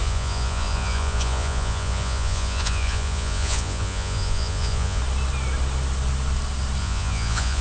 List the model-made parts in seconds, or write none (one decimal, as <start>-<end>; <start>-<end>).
0.0-5.0; 6.8-7.6